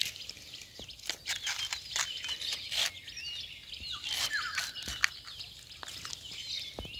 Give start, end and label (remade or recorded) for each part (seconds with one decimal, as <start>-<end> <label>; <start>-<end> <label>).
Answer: 0.0-7.0 recorded